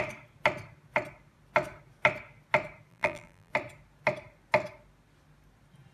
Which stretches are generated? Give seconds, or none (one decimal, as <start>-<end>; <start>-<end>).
2.9-3.5